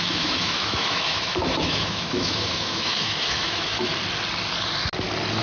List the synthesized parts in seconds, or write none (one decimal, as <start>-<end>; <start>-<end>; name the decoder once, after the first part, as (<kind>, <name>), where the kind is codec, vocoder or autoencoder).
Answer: 0.0-3.9 (autoencoder, DAC-VAE)